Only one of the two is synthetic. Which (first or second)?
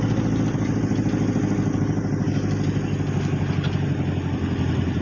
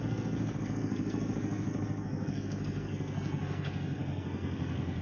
second